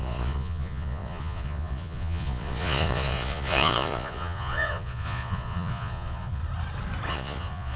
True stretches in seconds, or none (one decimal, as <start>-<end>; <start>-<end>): 6.4-7.1